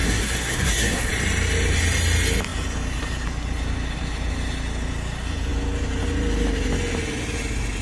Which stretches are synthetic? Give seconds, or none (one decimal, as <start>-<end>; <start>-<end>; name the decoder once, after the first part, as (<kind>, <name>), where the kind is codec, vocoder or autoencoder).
0.0-1.1 (codec, SNAC)